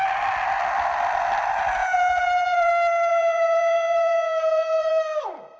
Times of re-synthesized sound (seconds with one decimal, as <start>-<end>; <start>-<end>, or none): 1.8-2.7; 3.1-4.9